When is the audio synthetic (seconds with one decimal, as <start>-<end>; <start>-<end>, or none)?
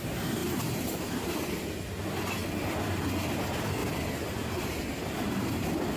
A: none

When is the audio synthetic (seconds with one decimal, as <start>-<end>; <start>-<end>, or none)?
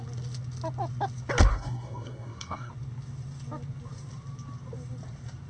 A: 1.5-2.7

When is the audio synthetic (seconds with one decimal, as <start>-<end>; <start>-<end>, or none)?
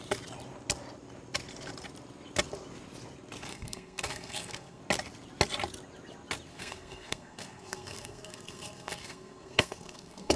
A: 3.5-4.8; 6.5-10.4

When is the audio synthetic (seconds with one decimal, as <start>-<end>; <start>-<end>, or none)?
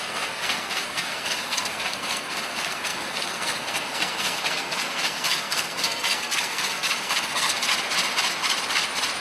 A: 0.0-7.7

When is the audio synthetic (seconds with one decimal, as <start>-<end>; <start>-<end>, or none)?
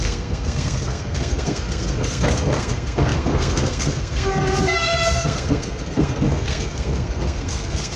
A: 0.0-8.0